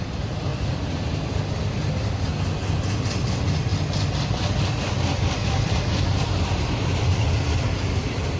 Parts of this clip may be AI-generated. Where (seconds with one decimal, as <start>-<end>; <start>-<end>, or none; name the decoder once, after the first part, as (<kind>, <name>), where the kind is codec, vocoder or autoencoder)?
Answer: 2.6-3.3 (vocoder, BigVGAN v2); 3.7-8.4